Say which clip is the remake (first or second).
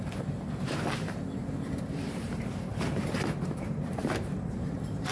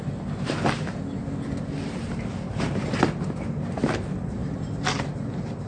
first